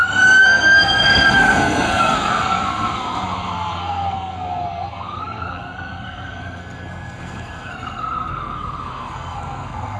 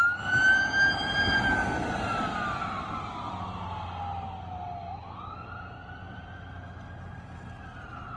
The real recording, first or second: second